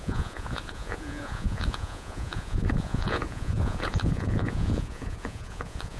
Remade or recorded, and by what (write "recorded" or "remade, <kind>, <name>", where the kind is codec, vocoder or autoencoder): remade, vocoder, Vocos